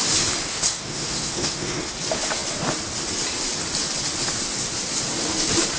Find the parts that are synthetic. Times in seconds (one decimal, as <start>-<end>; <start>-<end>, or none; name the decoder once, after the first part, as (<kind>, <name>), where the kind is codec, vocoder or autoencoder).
0.5-1.8 (codec, SNAC)